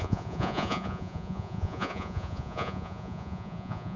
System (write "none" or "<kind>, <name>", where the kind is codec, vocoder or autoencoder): vocoder, Vocos